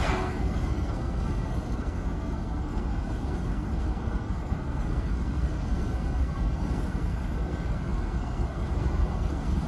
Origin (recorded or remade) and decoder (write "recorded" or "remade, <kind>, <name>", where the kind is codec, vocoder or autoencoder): remade, codec, SNAC